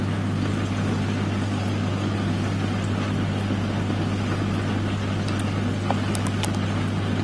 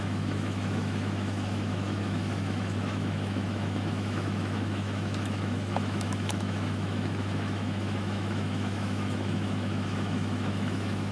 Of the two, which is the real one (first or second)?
first